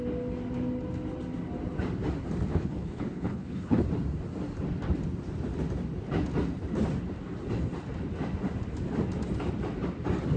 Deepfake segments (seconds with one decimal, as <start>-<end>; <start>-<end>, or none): 2.5-3.8